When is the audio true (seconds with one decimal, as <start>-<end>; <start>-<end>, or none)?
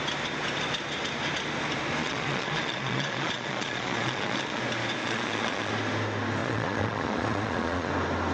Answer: 0.0-2.0; 4.6-5.0; 5.7-6.4; 7.9-8.3